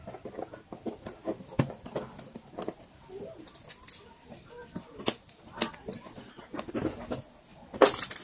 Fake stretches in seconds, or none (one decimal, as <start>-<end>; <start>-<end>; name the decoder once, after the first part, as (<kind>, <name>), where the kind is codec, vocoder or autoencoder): 1.3-1.9 (vocoder, BigVGAN v2); 4.6-6.7